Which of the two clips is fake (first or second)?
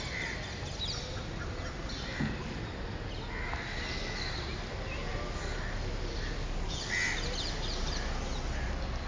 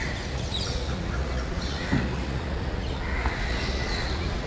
second